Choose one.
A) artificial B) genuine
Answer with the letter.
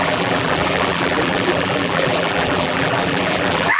A